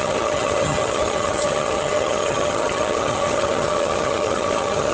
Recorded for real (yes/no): no